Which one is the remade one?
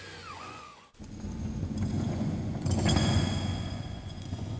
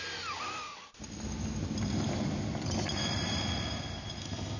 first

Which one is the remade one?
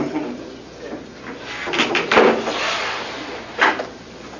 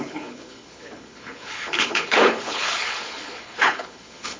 second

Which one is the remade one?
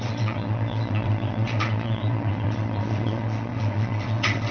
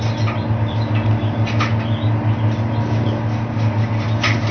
first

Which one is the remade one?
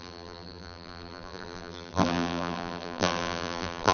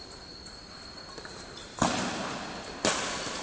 first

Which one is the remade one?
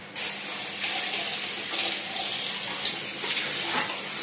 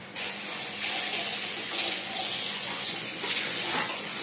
second